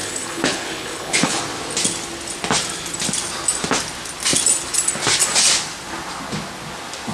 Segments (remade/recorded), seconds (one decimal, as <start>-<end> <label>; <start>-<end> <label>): 0.0-1.4 remade; 1.4-7.1 recorded